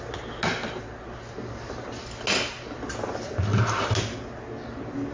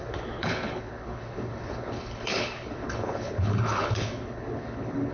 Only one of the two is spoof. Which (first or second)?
second